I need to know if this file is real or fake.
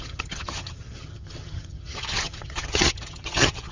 fake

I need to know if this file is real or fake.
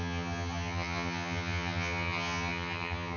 fake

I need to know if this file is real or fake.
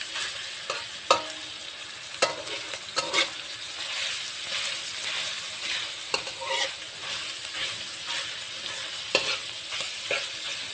real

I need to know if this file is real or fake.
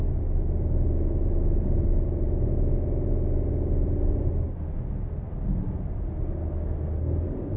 real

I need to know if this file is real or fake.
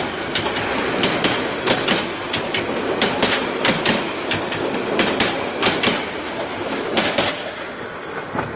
real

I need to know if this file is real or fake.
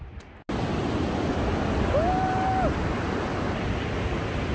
real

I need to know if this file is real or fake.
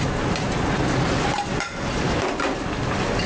real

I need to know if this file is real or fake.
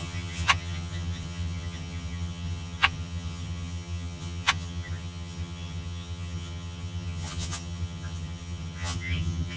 fake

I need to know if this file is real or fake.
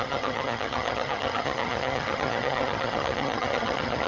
fake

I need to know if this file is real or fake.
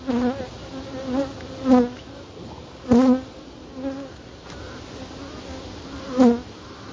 real